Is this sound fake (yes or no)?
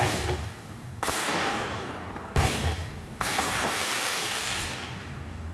yes